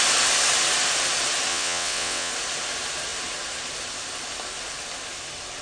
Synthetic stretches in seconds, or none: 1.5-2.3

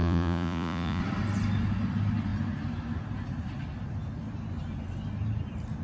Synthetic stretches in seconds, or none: 0.0-1.0

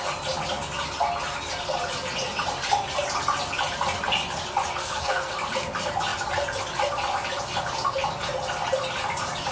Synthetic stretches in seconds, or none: 4.8-5.3